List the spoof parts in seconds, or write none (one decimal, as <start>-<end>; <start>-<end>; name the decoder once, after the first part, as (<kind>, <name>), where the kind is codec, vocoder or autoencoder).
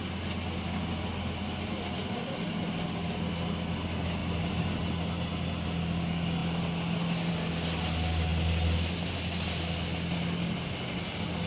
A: 4.2-4.8 (vocoder, BigVGAN v2)